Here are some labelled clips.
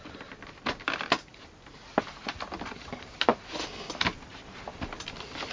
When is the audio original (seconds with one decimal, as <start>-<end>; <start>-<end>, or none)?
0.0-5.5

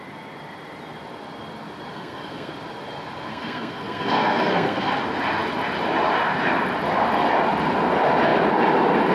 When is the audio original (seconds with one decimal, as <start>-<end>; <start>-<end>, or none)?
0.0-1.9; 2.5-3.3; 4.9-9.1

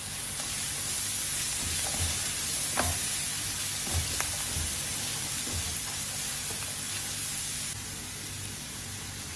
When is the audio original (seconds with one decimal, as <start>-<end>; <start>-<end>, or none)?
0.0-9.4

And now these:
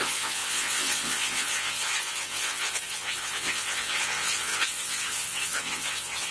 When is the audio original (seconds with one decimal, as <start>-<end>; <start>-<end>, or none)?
none